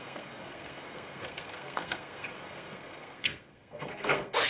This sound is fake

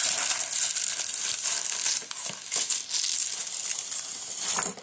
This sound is real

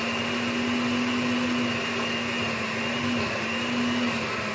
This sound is real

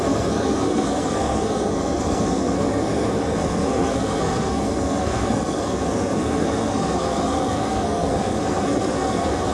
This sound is fake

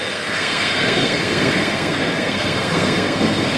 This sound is fake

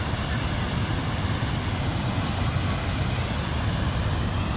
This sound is real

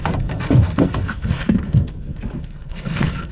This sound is fake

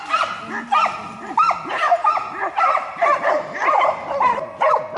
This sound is real